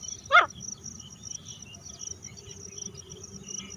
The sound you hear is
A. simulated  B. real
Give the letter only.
B